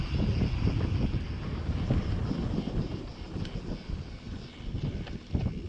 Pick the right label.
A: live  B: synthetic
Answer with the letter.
A